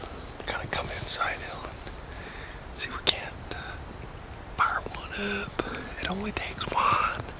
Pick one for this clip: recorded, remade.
recorded